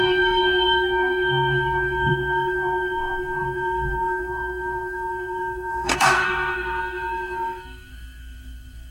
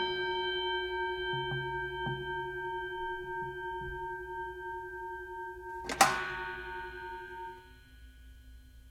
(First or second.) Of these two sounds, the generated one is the first